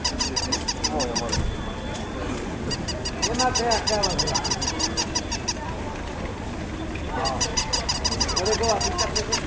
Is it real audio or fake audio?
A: real